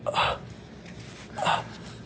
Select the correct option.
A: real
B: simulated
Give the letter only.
A